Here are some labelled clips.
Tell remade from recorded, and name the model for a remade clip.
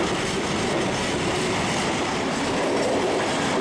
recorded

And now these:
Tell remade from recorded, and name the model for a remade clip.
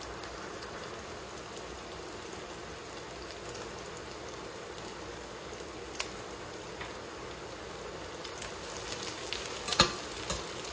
recorded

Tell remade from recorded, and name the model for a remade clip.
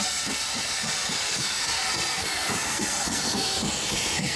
remade, codec, SNAC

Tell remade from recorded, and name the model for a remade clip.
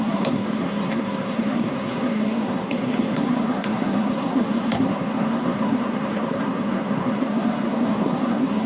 remade, codec, SNAC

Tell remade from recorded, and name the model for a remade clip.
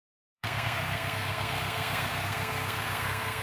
remade, codec, SNAC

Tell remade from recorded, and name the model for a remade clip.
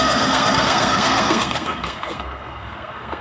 remade, codec, SNAC